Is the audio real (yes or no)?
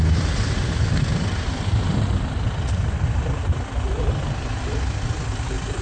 yes